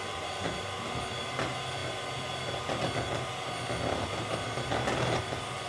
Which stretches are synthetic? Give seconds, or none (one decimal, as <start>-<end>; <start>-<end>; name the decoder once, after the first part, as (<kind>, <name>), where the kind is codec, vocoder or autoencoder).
none